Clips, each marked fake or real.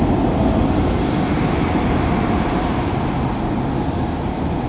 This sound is real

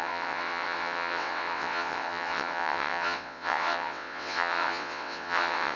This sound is fake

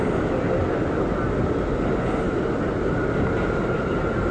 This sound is real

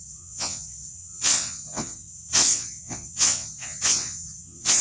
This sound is fake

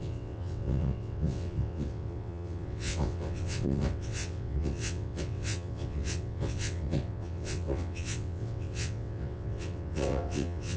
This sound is fake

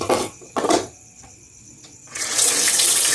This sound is fake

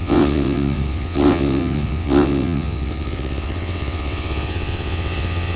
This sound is fake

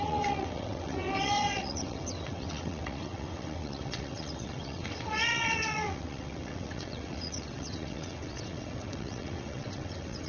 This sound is fake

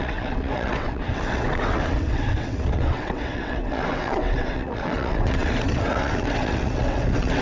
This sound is fake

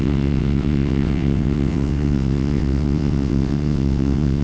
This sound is fake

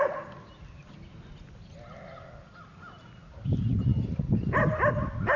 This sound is real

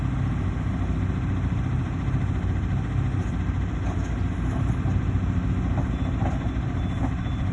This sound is real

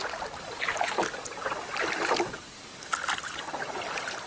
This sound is real